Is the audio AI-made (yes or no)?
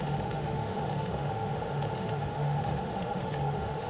yes